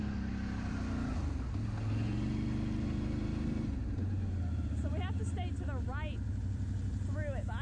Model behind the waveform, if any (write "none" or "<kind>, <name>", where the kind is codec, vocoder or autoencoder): none